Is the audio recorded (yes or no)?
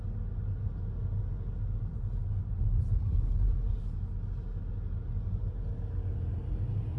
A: yes